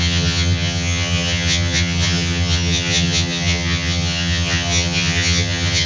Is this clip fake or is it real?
fake